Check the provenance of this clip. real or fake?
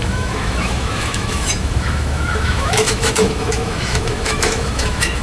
fake